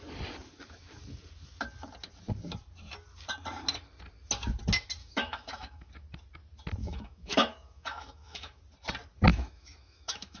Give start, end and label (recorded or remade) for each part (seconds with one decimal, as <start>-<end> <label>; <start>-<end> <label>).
0.0-5.0 recorded; 5.0-5.9 remade; 5.9-6.8 recorded; 6.8-8.6 remade; 8.6-9.3 recorded; 9.3-10.4 remade